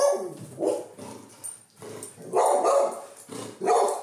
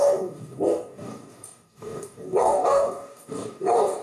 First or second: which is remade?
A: second